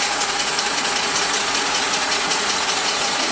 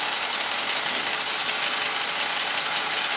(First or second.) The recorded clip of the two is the second